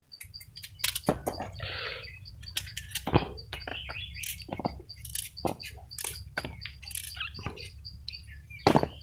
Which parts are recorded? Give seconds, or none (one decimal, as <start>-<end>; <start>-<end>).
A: 0.0-1.2; 2.3-9.0

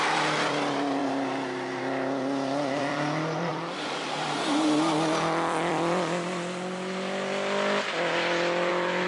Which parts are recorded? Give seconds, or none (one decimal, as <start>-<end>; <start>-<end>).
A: 1.0-2.8

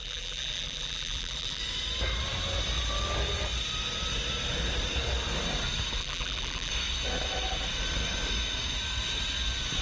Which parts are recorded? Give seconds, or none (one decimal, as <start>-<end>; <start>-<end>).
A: 1.6-6.0; 6.7-9.8

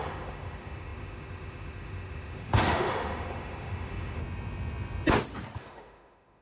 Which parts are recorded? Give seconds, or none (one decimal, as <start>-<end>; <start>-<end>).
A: 4.2-5.6

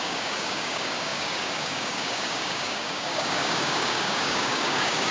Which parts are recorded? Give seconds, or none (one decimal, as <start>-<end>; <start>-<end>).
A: none

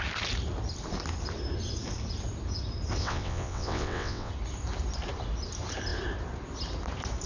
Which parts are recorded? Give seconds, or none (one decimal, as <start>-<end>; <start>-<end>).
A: 0.0-3.0; 4.3-7.3

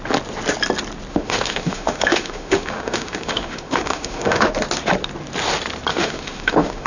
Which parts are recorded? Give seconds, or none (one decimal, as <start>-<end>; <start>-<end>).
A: 0.0-1.1; 4.5-5.9

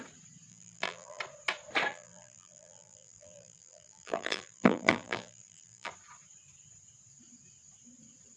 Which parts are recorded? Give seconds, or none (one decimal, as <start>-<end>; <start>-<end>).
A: 0.0-0.5; 1.2-1.9; 5.9-8.4